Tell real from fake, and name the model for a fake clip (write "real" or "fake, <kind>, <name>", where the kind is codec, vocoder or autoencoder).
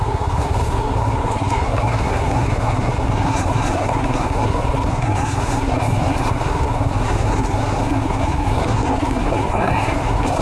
fake, codec, SNAC